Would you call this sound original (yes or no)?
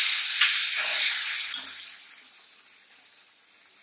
yes